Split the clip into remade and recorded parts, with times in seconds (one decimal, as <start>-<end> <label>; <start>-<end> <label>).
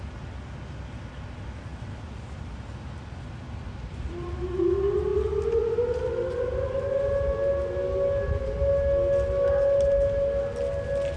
0.0-11.2 recorded